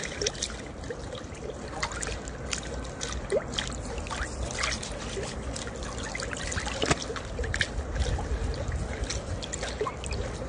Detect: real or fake real